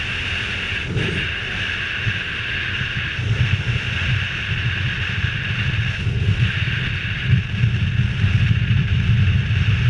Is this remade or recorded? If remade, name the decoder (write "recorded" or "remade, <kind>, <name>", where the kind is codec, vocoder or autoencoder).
recorded